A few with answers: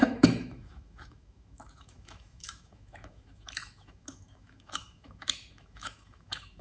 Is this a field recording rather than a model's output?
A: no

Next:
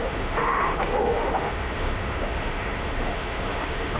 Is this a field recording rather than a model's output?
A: no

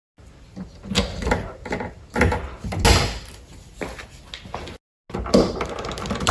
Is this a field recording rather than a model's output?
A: yes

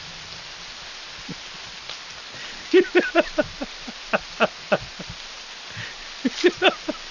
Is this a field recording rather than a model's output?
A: yes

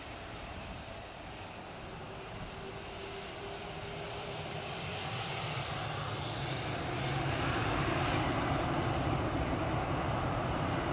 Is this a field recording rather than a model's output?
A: yes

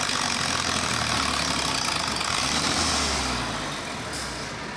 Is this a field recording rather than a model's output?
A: yes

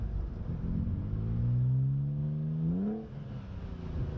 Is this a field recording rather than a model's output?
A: yes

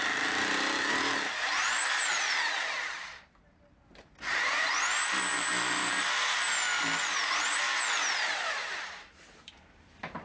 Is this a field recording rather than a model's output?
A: yes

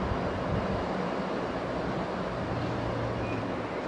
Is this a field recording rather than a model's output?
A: yes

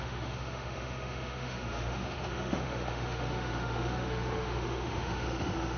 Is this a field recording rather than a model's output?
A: no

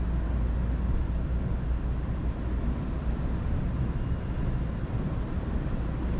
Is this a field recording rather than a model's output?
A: yes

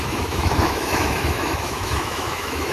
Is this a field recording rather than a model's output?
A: no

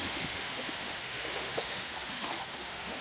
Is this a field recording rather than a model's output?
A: no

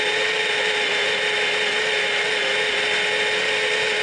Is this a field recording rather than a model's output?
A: yes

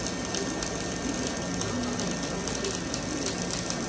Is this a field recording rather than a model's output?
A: yes